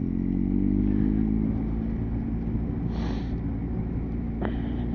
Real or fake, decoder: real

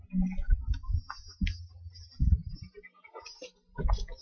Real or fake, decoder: real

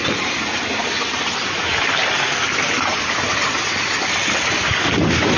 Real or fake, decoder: fake, vocoder, BigVGAN v2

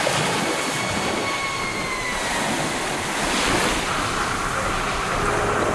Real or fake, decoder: real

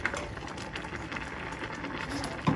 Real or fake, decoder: real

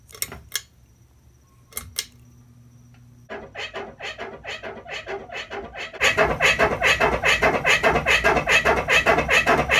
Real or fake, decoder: real